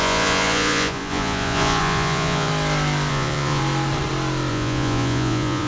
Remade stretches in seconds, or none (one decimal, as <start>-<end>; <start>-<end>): 0.0-2.5; 3.1-3.6; 4.5-5.7